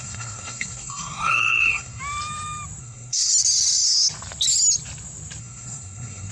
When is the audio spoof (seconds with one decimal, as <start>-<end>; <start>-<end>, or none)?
0.0-2.0; 2.8-3.3; 5.4-6.3